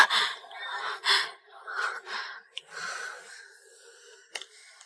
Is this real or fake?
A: real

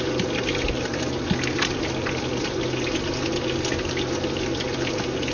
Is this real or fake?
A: real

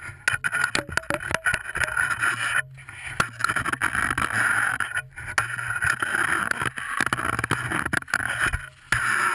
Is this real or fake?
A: real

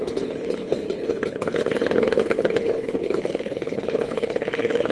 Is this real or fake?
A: fake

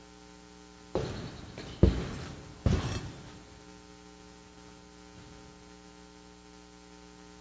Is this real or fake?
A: real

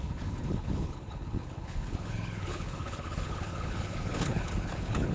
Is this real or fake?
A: fake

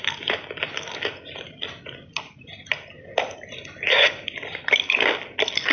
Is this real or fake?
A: real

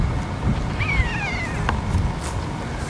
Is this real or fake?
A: real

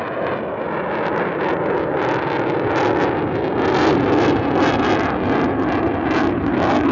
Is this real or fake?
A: real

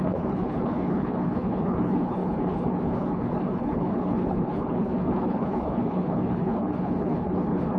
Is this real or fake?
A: fake